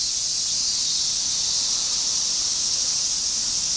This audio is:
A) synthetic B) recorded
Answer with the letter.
B